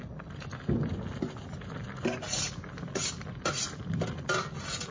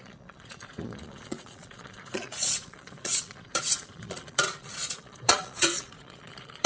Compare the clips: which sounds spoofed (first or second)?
second